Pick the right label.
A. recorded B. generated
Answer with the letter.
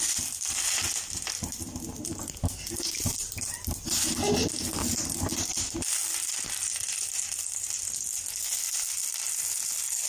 A